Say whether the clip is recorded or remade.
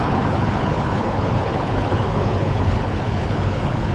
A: remade